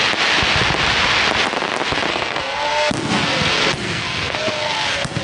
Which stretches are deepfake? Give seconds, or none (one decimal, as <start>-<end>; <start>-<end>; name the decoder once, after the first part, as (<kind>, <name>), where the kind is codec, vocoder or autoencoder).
2.1-5.2 (codec, SNAC)